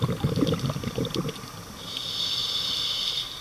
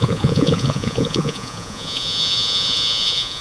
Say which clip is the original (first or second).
first